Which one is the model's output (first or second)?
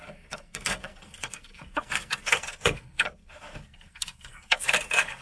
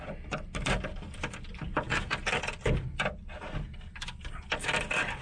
first